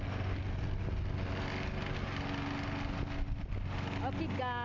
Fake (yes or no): no